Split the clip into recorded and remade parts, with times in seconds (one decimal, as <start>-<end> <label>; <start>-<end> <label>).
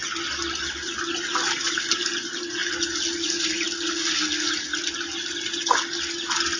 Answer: 0.0-6.6 recorded